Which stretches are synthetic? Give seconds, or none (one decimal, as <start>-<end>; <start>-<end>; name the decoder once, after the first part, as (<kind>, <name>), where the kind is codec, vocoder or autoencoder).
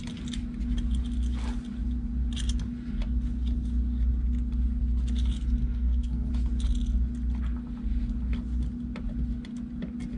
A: 5.6-6.3 (codec, SNAC)